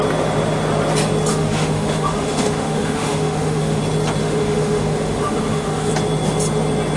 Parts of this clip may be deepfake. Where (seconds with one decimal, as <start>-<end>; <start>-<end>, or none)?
1.3-3.8; 4.2-5.9